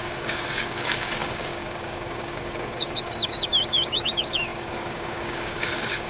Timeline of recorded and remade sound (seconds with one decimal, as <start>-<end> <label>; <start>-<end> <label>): 0.0-6.1 remade